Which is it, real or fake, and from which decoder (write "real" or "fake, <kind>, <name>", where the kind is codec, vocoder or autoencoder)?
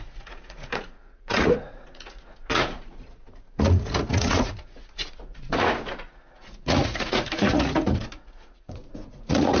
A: fake, vocoder, Vocos